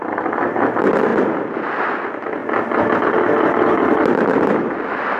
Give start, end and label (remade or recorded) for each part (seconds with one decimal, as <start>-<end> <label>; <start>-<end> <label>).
0.0-2.4 remade; 2.4-4.7 recorded; 4.7-5.2 remade